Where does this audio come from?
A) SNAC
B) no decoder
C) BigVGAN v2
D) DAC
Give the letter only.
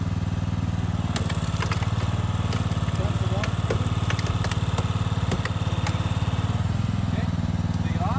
B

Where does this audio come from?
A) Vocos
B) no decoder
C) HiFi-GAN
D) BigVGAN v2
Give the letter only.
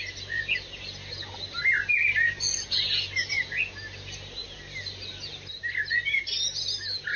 B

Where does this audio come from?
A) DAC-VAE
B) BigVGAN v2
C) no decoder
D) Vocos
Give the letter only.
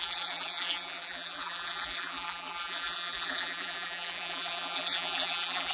B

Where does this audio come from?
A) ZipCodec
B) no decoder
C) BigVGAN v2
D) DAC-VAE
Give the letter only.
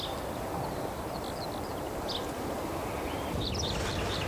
B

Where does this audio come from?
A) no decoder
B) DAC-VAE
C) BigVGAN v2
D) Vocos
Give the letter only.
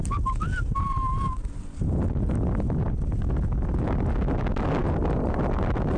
A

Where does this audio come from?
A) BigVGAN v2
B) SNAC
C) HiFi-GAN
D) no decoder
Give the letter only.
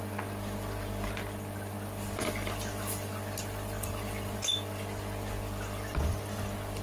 D